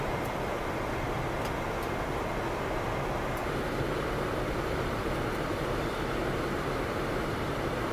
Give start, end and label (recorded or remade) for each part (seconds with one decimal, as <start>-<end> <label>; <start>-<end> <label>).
0.0-3.4 recorded; 3.4-7.2 remade; 7.2-7.9 recorded